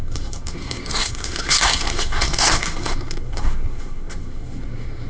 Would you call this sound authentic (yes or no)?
no